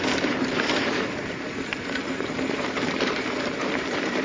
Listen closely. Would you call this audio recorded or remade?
remade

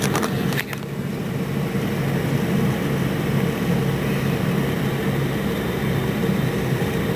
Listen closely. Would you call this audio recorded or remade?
recorded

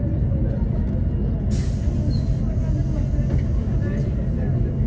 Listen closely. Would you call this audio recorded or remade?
recorded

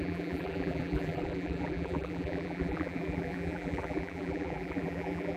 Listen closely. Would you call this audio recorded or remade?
remade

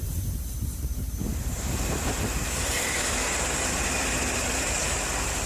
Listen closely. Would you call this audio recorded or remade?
remade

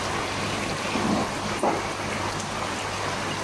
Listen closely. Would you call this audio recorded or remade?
recorded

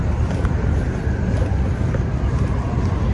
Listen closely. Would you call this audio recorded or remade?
recorded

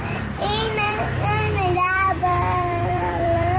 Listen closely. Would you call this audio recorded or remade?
remade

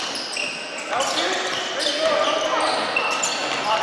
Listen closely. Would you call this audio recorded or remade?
recorded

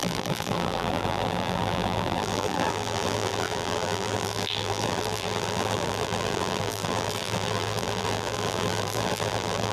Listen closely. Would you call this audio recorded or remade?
remade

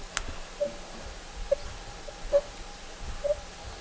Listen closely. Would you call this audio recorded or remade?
recorded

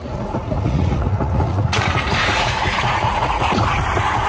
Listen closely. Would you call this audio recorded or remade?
remade